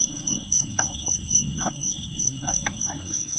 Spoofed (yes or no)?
yes